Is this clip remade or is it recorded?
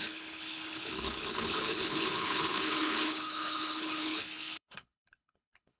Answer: remade